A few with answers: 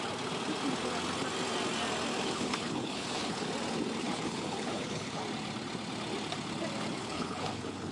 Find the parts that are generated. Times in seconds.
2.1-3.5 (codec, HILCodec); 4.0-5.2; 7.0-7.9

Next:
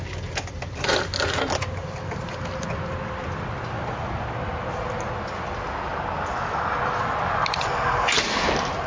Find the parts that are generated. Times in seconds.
none

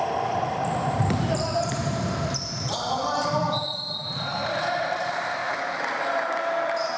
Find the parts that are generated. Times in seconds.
0.0-5.4 (vocoder, BigVGAN v2)

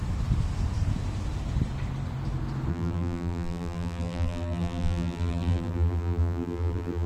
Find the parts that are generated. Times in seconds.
2.7-7.1 (vocoder, BigVGAN v2)

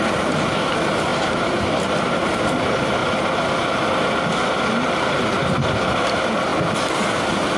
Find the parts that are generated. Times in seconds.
1.1-2.4 (vocoder, BigVGAN v2)